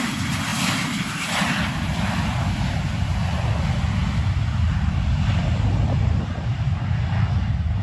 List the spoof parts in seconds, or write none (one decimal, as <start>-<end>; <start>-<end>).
0.5-1.3